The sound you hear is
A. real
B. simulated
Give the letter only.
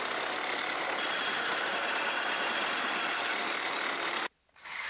A